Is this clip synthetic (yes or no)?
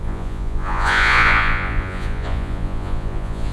yes